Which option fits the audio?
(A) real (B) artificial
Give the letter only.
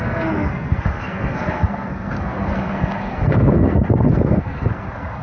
B